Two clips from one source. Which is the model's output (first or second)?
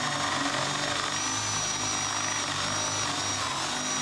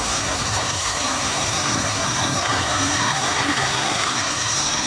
second